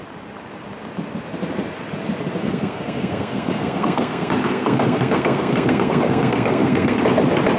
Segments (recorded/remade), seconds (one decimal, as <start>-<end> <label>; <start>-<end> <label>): 0.0-2.4 recorded; 2.4-7.0 remade; 7.0-7.6 recorded